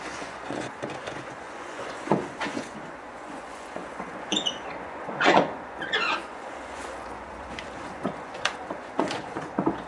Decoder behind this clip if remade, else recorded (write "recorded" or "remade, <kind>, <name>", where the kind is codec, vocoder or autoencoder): remade, vocoder, Vocos